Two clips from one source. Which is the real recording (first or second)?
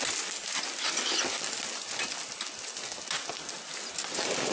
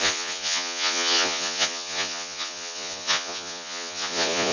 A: first